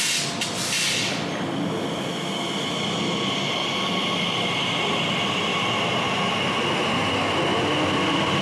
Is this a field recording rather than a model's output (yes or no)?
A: yes